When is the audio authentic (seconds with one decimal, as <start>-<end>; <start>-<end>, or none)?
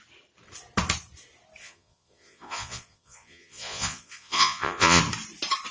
0.0-1.6; 5.0-5.7